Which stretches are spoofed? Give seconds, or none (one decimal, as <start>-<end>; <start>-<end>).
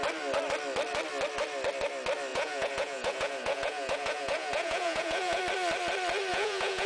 2.3-5.4; 6.3-6.9